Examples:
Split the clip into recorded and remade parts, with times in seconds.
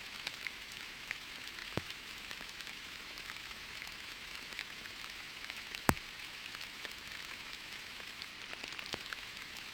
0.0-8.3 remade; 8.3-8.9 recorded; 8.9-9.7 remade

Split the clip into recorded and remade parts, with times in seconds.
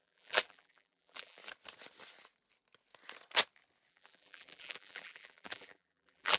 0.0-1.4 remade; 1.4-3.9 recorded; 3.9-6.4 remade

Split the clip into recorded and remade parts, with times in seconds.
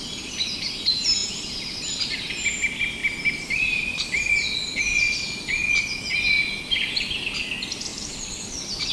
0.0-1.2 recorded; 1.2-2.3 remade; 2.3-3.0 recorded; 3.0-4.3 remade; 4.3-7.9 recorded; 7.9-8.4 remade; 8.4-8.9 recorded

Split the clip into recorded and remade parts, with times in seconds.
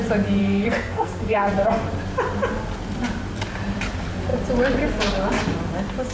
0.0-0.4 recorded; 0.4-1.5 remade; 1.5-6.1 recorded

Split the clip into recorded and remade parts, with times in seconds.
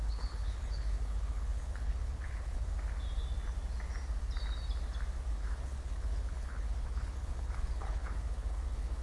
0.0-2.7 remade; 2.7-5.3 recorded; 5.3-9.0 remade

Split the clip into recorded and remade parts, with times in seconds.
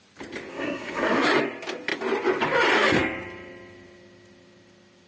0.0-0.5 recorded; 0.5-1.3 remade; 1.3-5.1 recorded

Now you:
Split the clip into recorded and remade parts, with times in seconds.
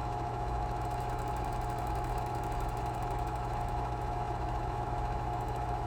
0.0-5.9 remade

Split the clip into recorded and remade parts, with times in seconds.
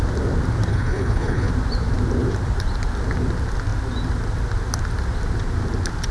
0.0-0.7 recorded; 0.7-1.5 remade; 1.5-6.1 recorded